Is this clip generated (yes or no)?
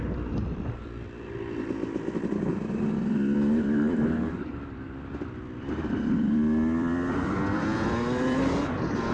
yes